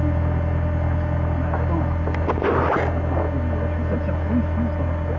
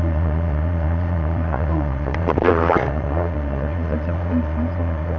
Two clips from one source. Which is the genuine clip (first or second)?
first